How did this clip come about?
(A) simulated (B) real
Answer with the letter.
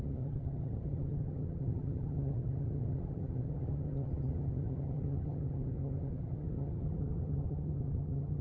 A